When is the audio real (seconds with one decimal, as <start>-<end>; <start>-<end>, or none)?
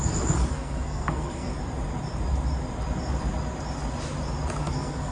0.0-0.5; 1.5-4.6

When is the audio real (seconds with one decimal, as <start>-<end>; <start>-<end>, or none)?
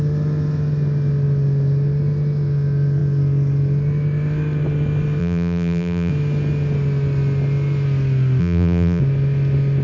0.0-5.2; 6.1-8.4; 9.0-9.8